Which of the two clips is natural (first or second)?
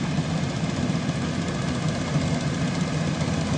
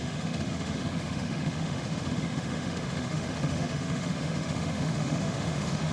first